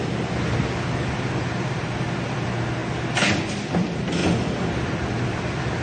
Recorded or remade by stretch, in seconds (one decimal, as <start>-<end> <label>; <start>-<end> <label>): 0.0-5.8 recorded